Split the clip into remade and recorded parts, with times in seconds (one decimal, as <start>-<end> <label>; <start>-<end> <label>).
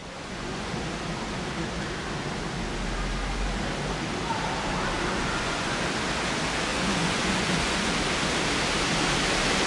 0.0-0.8 remade; 0.8-5.1 recorded; 5.1-5.8 remade; 5.8-6.7 recorded; 6.7-7.9 remade; 7.9-9.7 recorded